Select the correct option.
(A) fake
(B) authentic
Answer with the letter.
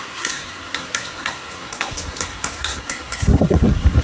A